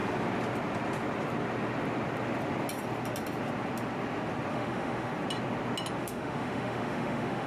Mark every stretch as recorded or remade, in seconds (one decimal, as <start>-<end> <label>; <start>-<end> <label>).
0.0-4.5 recorded; 4.5-5.1 remade; 5.1-6.0 recorded; 6.0-7.5 remade